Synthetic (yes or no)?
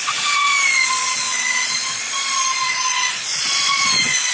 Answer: yes